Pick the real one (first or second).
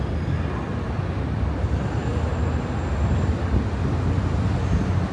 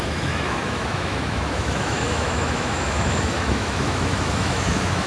first